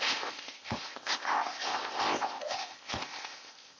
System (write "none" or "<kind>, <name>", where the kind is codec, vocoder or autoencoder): codec, ZipCodec